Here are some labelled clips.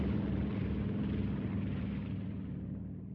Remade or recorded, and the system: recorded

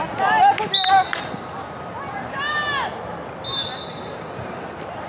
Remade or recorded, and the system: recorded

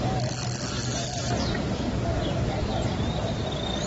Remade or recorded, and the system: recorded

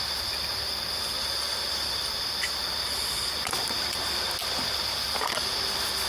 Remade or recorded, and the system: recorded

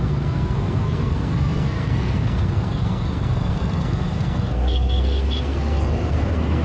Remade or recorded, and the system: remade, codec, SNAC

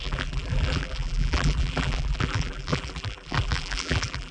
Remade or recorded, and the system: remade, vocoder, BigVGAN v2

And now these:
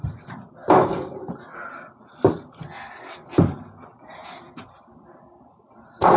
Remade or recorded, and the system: recorded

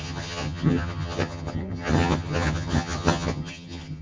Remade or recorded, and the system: remade, vocoder, HiFi-GAN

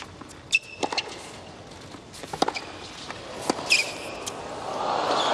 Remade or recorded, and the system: recorded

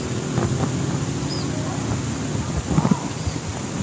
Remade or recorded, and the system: recorded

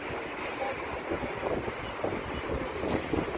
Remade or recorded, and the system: recorded